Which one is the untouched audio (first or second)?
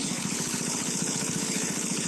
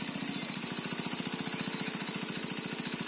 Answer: second